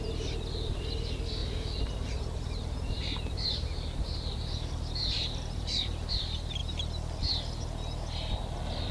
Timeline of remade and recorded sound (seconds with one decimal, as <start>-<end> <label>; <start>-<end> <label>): 0.0-1.4 recorded; 1.4-6.1 remade; 6.1-8.9 recorded